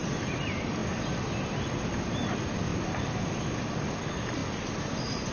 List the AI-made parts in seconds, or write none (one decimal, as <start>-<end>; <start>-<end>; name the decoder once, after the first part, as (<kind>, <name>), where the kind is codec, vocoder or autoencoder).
0.0-4.4 (vocoder, BigVGAN v2)